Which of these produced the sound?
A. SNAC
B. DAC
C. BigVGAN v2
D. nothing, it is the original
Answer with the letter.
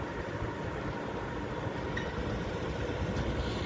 D